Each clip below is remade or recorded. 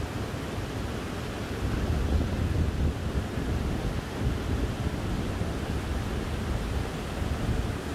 recorded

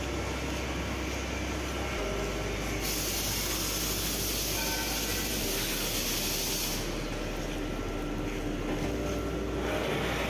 recorded